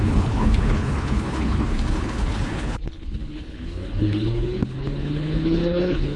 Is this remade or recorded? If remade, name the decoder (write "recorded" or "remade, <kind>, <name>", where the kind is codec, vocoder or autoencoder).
remade, codec, HILCodec